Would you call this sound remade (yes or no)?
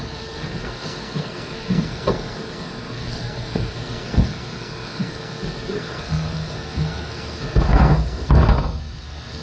yes